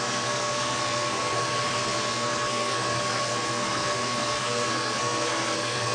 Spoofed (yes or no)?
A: yes